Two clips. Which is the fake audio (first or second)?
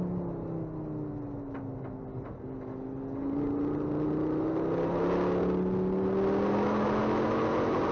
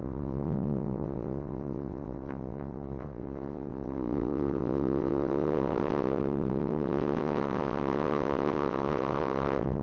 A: second